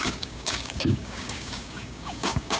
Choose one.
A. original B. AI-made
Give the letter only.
B